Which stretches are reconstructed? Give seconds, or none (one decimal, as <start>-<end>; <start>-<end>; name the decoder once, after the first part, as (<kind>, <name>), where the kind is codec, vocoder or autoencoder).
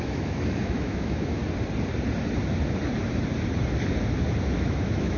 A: 0.0-1.4 (autoencoder, DAC-VAE); 4.5-5.2